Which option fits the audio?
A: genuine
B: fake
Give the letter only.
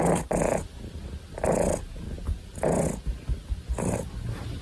A